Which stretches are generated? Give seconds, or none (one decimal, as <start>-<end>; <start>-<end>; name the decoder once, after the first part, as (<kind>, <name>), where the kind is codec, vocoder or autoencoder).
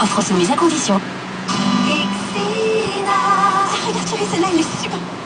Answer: 0.0-1.9 (vocoder, Vocos); 2.8-5.3